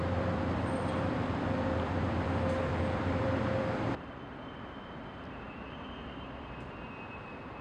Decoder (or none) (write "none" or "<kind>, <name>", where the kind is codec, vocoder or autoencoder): vocoder, BigVGAN v2